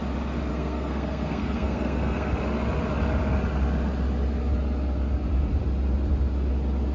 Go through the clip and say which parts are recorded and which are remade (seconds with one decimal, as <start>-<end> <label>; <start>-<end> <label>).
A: 0.0-0.5 recorded; 0.5-2.3 remade; 2.3-6.9 recorded